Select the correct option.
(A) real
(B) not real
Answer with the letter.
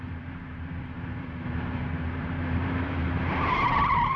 B